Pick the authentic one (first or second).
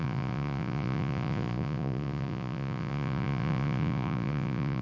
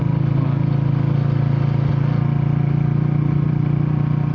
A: second